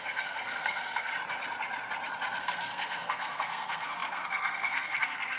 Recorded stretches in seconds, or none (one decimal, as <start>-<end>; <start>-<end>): 1.1-2.4